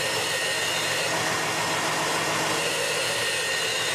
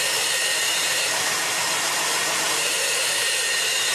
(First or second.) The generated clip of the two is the second